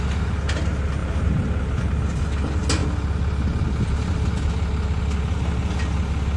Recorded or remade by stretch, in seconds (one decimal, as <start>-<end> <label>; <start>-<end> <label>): 0.0-1.0 recorded; 1.0-1.9 remade; 1.9-6.4 recorded